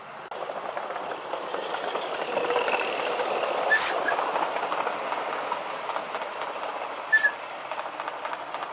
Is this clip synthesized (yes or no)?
no